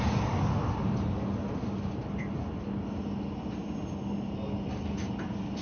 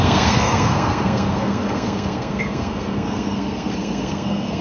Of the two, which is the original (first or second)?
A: first